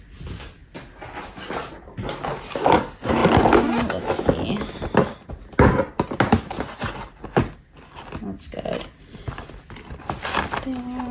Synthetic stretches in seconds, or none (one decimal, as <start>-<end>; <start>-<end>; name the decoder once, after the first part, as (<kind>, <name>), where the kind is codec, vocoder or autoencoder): none

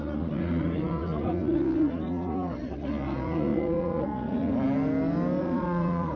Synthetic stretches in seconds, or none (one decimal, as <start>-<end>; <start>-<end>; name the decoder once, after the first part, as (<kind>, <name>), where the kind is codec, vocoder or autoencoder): 0.0-4.5 (vocoder, Vocos); 5.4-6.2

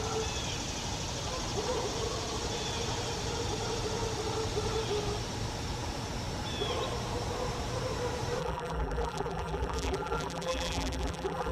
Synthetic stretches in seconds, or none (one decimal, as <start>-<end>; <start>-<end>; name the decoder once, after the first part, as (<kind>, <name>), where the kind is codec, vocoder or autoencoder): 8.4-11.5 (vocoder, BigVGAN v2)

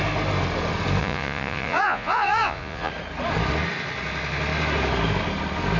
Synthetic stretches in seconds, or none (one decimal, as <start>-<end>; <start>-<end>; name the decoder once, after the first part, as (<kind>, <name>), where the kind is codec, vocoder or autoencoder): 1.0-2.9 (vocoder, Vocos)

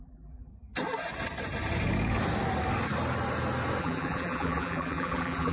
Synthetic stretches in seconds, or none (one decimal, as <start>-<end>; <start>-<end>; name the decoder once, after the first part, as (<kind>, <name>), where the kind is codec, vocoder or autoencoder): 0.0-0.5 (vocoder, BigVGAN v2); 3.8-5.5